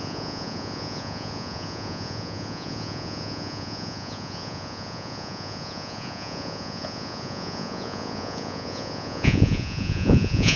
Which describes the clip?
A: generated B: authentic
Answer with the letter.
A